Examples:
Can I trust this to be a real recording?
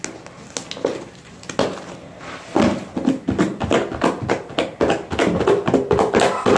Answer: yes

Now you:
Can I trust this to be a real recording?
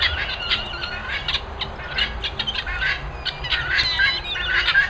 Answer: yes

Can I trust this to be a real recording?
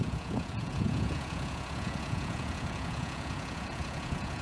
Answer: no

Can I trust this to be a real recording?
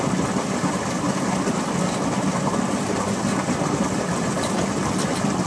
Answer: yes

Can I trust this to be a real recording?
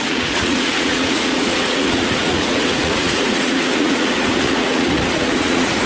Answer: no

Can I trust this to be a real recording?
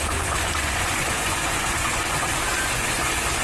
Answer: no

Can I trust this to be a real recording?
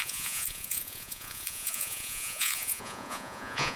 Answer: no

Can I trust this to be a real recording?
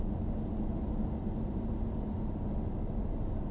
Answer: yes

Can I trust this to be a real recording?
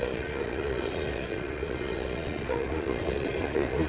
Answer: no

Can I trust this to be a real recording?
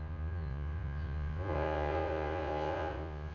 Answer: no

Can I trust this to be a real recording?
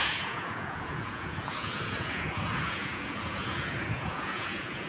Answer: no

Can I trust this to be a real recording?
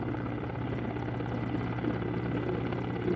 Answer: yes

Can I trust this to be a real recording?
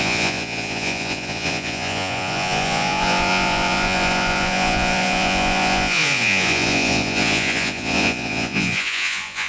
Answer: no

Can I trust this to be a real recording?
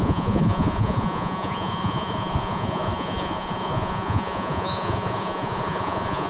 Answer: no